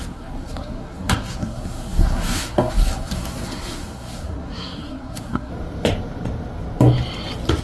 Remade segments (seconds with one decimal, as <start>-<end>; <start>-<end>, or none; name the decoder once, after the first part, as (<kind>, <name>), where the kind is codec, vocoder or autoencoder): 0.0-5.5 (codec, SNAC)